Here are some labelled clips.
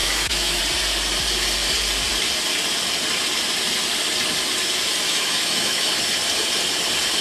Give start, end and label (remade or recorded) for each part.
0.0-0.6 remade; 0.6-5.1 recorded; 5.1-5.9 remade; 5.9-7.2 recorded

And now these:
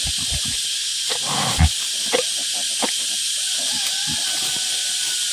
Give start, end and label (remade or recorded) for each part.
0.0-5.3 recorded